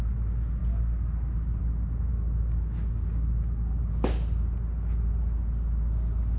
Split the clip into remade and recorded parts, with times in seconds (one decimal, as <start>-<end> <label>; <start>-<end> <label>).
0.0-6.4 recorded